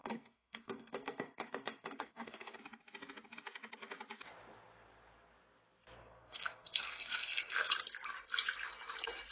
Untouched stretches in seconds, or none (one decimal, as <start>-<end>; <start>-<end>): 2.6-6.0; 7.7-9.3